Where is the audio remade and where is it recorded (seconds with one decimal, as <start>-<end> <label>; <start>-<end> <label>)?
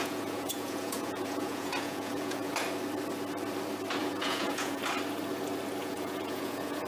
0.0-2.5 remade; 2.5-4.0 recorded; 4.0-4.8 remade; 4.8-5.8 recorded; 5.8-6.9 remade